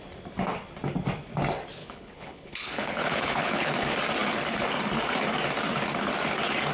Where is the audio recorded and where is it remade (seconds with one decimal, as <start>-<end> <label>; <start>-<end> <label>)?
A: 0.0-1.8 recorded; 1.8-3.7 remade; 3.7-6.7 recorded

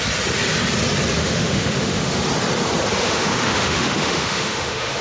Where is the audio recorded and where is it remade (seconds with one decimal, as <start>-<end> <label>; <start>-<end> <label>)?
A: 0.0-1.2 recorded; 1.2-2.2 remade; 2.2-3.0 recorded; 3.0-5.0 remade

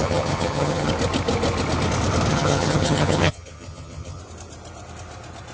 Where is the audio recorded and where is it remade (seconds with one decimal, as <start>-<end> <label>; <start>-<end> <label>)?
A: 0.0-0.9 remade; 0.9-2.3 recorded; 2.3-4.2 remade; 4.2-5.5 recorded

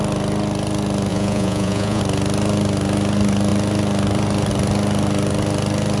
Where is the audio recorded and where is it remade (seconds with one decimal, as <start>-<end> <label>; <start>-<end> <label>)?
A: 0.0-1.1 recorded; 1.1-2.0 remade; 2.0-6.0 recorded

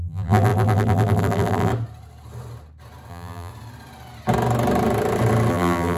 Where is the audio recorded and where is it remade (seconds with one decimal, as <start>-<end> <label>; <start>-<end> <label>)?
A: 0.0-1.7 remade; 1.7-3.1 recorded; 3.1-3.5 remade; 3.5-5.5 recorded; 5.5-6.0 remade